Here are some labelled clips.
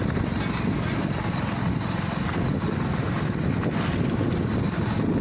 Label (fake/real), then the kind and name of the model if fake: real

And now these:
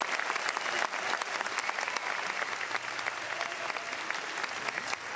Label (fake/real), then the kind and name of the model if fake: real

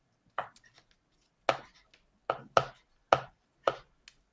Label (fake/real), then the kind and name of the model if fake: real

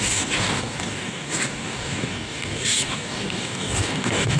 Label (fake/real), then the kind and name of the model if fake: fake, codec, DAC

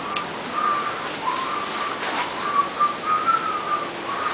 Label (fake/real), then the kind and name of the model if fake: real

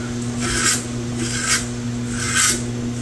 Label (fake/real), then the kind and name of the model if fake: real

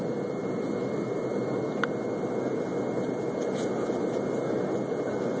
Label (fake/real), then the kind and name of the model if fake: real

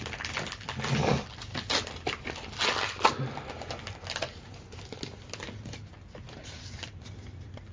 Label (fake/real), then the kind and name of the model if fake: real